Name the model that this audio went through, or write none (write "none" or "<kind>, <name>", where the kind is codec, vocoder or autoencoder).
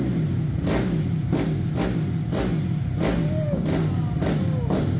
none